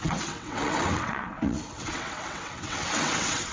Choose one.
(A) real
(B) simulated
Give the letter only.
B